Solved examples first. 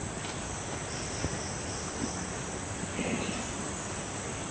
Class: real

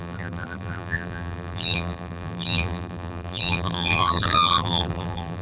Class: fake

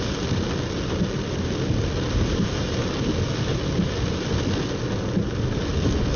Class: real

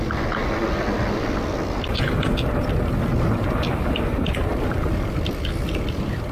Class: real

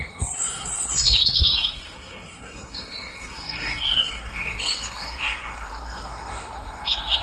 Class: fake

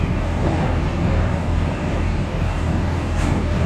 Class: fake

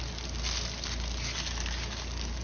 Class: real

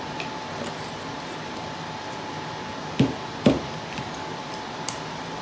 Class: real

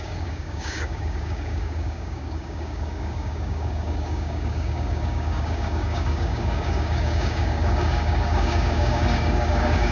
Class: fake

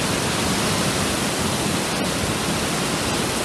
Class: real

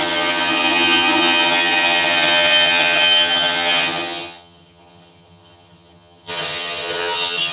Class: fake